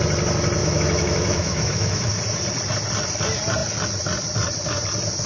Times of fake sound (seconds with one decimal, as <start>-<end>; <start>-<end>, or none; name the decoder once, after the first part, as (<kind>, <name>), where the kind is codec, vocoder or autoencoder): 0.6-2.1 (autoencoder, DAC-VAE)